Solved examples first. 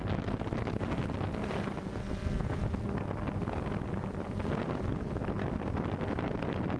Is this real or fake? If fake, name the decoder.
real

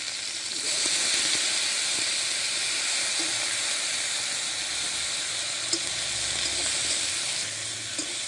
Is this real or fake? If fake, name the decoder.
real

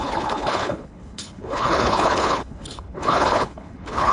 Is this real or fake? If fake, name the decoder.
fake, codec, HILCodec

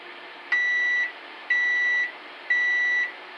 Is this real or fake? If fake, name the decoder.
real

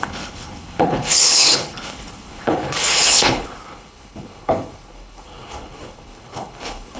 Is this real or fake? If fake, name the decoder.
fake, codec, HILCodec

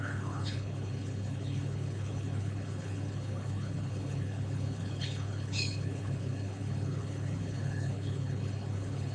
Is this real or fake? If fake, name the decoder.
fake, codec, HILCodec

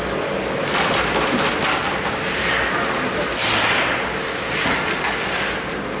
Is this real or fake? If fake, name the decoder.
real